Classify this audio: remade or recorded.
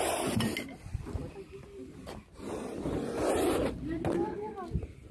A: recorded